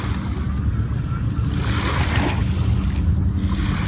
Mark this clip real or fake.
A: real